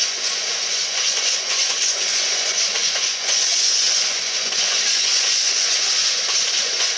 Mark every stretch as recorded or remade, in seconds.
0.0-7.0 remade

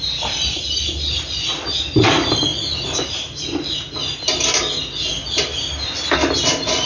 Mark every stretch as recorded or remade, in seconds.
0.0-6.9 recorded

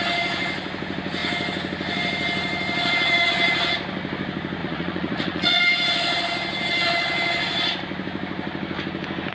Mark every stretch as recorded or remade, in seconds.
0.0-4.6 recorded; 4.6-5.6 remade; 5.6-9.3 recorded